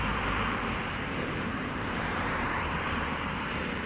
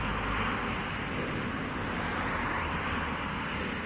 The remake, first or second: first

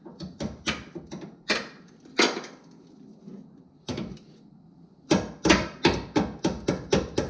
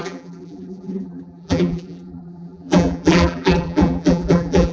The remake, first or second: second